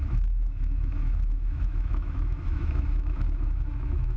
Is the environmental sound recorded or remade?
remade